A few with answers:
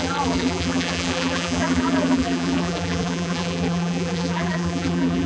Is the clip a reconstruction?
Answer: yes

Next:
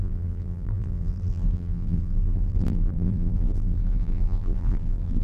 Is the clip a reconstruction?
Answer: yes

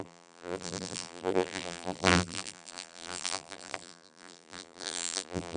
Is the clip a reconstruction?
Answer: yes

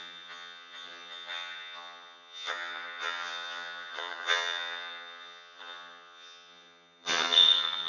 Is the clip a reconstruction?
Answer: yes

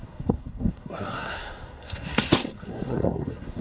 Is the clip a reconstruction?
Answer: yes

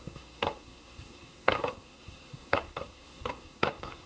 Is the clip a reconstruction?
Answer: yes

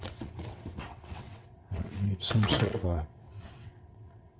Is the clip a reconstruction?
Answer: yes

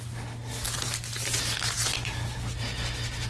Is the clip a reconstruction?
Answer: no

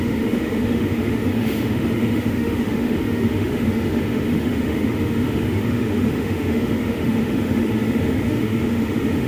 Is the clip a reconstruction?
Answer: yes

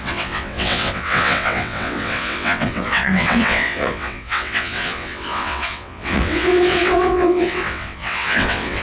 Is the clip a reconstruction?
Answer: yes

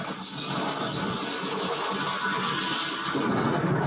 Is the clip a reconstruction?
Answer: no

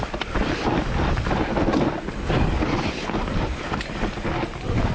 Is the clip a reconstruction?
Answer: no